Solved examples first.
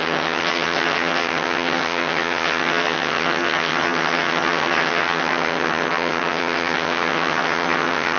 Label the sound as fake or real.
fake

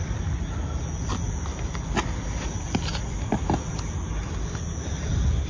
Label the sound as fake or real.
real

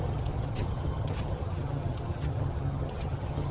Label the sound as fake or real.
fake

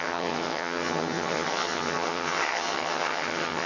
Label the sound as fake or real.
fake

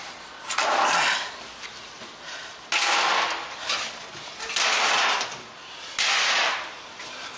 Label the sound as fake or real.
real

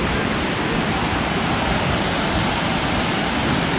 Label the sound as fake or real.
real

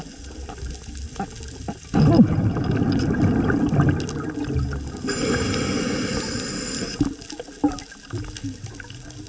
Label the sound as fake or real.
real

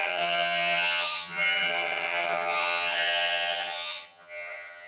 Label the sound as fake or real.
fake